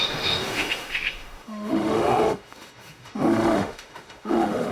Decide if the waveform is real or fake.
fake